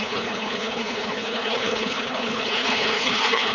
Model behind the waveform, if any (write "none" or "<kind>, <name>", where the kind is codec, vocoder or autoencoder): codec, HILCodec